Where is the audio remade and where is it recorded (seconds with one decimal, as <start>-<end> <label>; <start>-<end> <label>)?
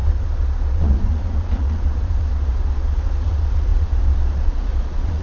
0.0-5.2 remade